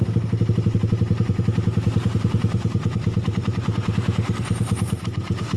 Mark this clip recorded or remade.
remade